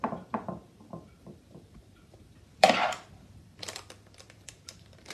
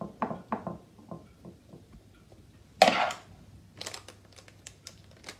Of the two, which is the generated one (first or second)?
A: first